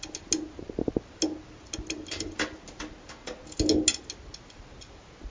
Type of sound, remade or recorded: recorded